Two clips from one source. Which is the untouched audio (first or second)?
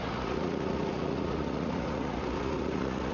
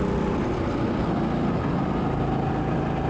second